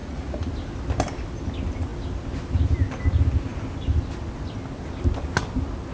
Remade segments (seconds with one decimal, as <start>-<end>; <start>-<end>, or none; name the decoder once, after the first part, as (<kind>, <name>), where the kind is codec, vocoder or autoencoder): 0.0-0.5 (vocoder, Vocos)